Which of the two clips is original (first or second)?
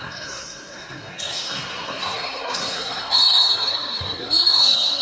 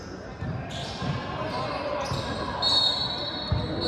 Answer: second